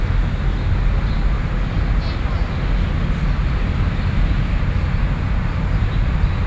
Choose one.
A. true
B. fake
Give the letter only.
A